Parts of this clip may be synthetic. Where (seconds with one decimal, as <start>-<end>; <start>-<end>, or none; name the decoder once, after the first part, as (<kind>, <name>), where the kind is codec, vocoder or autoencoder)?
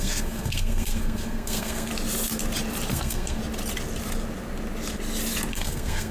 0.0-1.9 (codec, SNAC); 2.9-3.4; 5.5-6.1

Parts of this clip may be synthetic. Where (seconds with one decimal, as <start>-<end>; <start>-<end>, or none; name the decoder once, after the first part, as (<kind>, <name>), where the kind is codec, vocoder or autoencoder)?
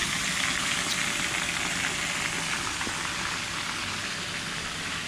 none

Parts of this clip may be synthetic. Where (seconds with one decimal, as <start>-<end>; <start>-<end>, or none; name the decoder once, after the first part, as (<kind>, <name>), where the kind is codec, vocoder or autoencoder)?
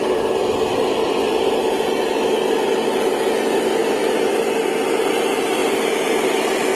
none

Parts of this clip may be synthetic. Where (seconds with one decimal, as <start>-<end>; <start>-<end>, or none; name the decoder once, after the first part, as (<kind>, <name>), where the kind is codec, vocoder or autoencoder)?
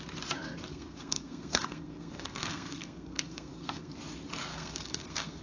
0.7-3.9 (codec, SNAC); 4.5-5.4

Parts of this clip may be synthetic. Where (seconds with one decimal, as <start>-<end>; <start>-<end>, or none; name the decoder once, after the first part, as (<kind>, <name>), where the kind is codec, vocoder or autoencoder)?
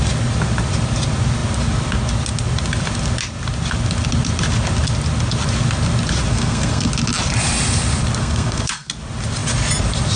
6.3-6.9 (codec, SNAC); 8.2-8.9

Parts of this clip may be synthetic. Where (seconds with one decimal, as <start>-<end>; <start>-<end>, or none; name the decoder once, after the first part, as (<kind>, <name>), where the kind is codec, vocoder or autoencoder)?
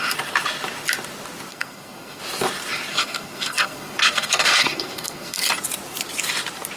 1.5-2.2 (codec, SNAC); 2.9-5.5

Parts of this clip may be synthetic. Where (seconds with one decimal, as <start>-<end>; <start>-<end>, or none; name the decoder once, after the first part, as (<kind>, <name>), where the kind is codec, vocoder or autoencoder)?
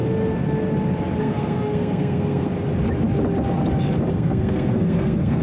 1.2-2.5 (codec, SNAC); 4.1-5.4